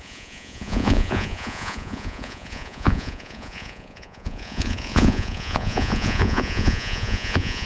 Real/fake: fake